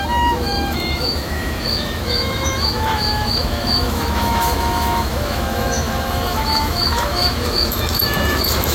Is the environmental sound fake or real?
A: fake